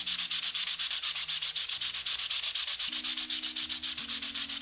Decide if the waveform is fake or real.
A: real